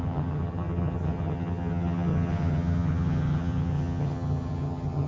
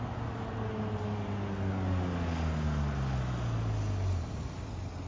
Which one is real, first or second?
second